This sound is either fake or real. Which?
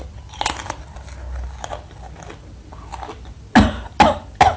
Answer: real